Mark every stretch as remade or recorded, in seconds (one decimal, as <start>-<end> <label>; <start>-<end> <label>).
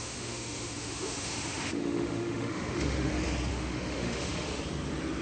0.0-3.1 remade; 3.1-3.5 recorded; 3.5-4.6 remade; 4.6-5.2 recorded